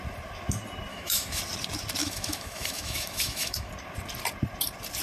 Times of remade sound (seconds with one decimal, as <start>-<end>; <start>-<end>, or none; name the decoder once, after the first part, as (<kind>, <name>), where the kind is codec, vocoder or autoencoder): 0.9-1.4 (autoencoder, DAC-VAE); 2.0-3.7